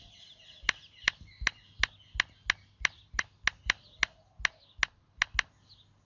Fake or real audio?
real